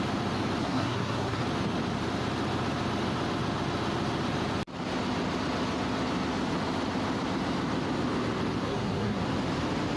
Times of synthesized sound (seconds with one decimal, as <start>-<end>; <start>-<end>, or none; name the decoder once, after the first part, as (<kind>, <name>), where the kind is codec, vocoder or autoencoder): 0.6-1.4 (codec, SNAC); 8.6-9.2